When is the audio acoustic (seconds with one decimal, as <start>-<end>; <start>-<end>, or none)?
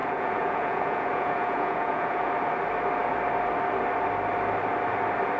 2.3-5.4